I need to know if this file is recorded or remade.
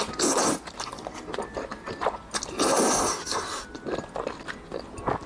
recorded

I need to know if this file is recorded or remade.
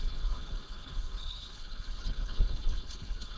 remade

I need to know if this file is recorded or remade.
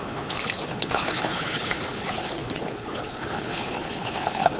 remade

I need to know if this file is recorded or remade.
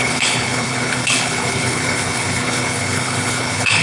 remade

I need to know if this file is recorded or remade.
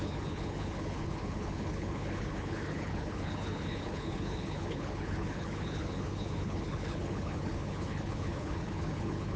remade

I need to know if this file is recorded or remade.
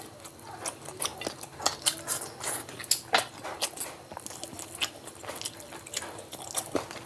recorded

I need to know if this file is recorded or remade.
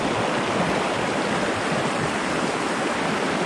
recorded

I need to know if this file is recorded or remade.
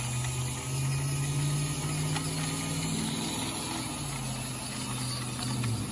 recorded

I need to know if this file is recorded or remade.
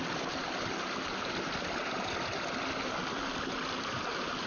recorded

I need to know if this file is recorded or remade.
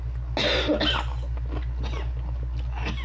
recorded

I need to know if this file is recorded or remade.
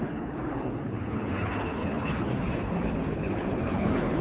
remade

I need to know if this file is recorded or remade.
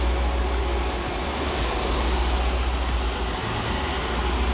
recorded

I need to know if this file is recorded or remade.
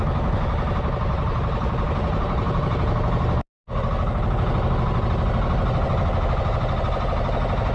recorded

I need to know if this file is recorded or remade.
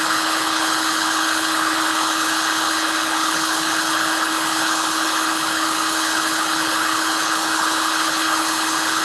remade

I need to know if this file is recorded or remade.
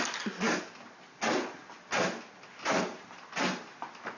recorded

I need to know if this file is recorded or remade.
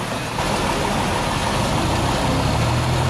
recorded